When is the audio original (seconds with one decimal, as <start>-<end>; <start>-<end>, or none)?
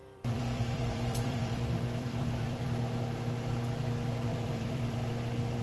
2.8-4.3; 5.1-5.6